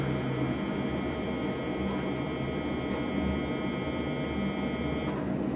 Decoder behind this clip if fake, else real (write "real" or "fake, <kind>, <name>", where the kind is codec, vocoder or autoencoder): real